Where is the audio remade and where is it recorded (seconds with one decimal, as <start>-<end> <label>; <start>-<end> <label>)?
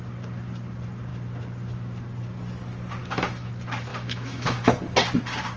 0.0-3.0 recorded; 3.0-3.5 remade; 3.5-3.9 recorded; 3.9-4.8 remade; 4.8-5.6 recorded